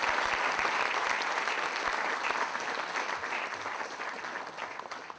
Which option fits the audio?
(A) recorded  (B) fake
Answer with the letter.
A